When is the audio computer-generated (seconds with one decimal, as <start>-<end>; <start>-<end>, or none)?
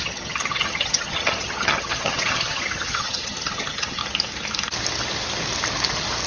0.0-4.0